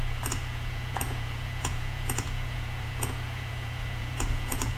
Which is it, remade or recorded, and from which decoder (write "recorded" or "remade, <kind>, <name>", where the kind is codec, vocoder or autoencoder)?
remade, vocoder, Vocos